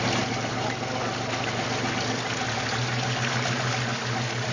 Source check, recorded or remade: recorded